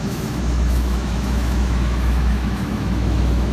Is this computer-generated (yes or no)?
yes